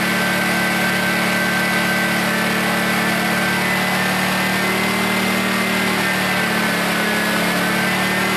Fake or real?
real